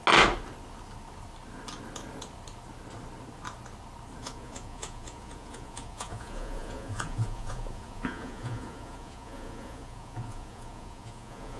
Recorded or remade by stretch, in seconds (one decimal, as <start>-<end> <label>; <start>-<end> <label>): 0.0-4.2 recorded; 4.2-11.6 remade